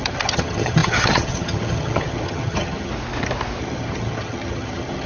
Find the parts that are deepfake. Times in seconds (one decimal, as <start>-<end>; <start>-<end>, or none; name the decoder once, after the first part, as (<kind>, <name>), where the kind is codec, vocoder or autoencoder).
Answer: 0.0-2.9 (vocoder, HiFi-GAN); 3.6-5.1

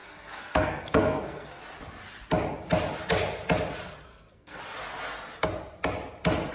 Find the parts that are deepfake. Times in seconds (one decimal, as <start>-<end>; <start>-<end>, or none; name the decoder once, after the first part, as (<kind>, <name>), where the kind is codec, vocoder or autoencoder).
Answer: 0.0-1.6 (codec, SNAC); 4.1-4.6

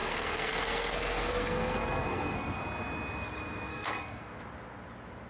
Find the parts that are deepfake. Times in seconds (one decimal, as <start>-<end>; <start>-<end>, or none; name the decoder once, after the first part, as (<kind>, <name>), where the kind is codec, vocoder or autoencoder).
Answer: 0.0-2.6 (codec, SNAC); 3.7-4.3

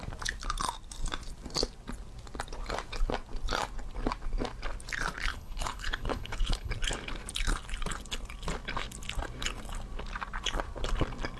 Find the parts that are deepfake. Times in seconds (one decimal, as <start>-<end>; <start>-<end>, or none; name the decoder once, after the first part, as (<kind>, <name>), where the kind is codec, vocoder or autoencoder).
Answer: 5.3-6.7 (codec, HILCodec)

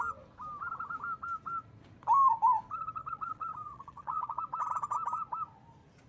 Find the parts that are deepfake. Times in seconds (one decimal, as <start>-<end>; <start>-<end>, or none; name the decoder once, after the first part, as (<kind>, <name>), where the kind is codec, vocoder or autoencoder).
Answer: 3.0-4.4 (vocoder, Vocos)

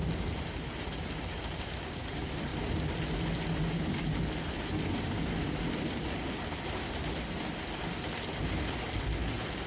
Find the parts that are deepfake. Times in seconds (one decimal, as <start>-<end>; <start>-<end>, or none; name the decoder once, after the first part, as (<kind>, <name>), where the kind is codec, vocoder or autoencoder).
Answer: none

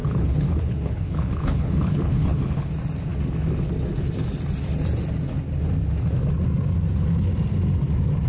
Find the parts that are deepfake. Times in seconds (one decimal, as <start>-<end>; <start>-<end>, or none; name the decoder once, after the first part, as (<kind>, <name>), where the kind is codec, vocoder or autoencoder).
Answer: 0.0-2.7 (codec, HILCodec)